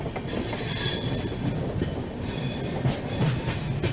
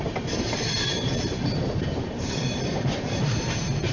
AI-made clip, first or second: second